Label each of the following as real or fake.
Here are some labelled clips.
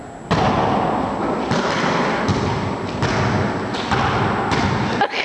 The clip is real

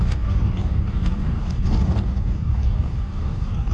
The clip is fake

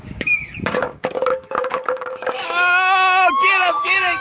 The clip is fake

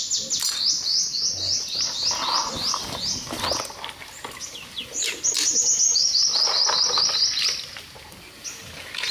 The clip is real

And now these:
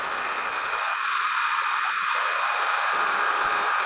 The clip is real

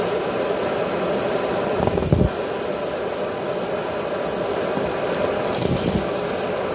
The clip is real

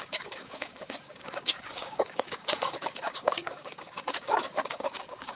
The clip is fake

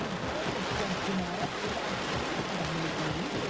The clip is real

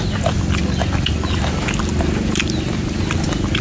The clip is real